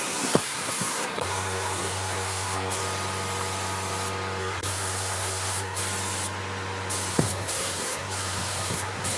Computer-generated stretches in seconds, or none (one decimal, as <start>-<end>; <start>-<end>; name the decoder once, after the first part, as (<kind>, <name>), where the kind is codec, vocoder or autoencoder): 0.0-2.8 (codec, SNAC); 4.4-5.8; 7.1-9.2